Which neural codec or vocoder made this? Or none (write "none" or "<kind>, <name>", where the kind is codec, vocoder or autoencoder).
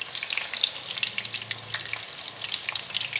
none